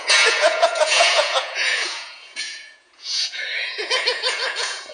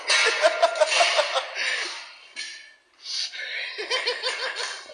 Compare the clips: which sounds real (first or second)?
second